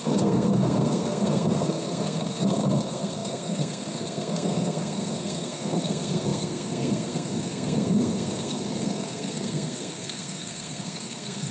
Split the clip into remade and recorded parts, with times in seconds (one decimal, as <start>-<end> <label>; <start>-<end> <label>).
0.0-11.5 remade